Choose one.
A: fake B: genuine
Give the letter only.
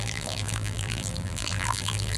A